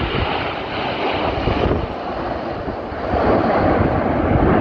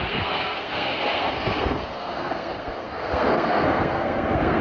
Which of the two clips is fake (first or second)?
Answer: second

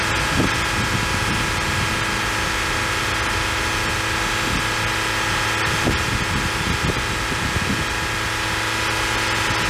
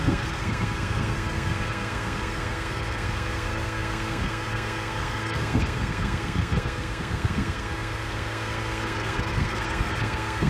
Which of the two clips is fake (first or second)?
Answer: second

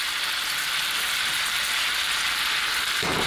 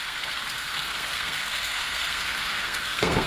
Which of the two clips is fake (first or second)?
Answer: second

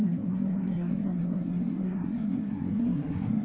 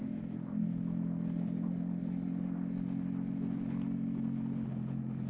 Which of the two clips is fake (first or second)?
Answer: first